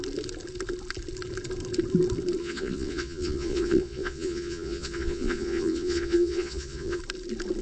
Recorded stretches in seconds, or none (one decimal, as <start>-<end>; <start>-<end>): 0.0-2.4; 7.0-7.6